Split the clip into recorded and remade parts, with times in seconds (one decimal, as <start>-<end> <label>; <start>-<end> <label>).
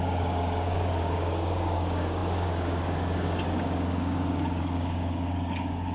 0.0-5.9 remade